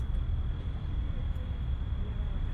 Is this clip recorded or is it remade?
recorded